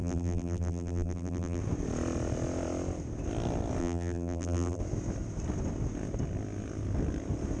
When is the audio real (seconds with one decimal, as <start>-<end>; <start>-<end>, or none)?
1.6-3.8; 4.8-7.6